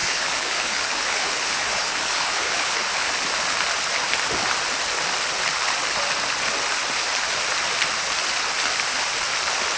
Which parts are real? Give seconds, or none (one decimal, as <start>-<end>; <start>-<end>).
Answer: 3.1-9.8